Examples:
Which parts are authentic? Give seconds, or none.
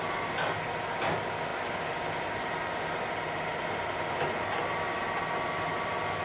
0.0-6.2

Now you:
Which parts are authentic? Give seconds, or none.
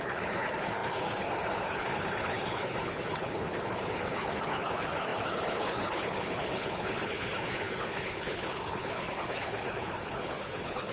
none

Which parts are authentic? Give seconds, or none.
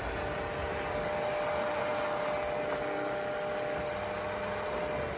0.0-5.2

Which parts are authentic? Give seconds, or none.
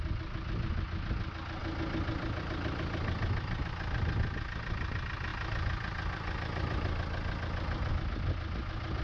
0.0-9.0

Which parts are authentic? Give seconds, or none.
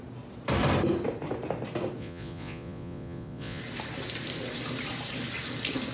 0.0-2.0; 3.6-5.9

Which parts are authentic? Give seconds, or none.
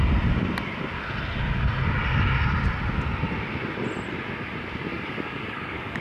0.0-4.9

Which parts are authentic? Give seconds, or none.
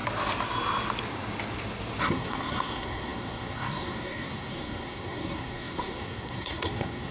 0.0-2.0